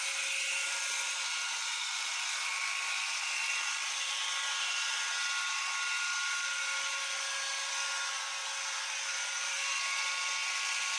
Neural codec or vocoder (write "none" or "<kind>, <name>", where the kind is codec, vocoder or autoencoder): none